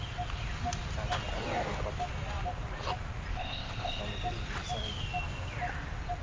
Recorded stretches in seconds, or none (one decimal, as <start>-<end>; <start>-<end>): 0.0-3.3; 4.0-6.2